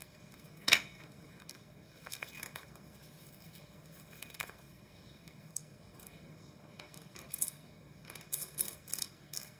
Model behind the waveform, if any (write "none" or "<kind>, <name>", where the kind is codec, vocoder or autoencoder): codec, SNAC